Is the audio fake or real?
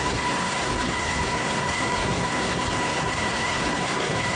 fake